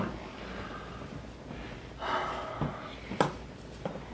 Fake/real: real